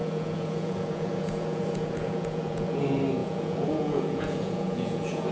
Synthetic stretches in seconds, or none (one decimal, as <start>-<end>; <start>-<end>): 0.0-2.8; 3.2-5.3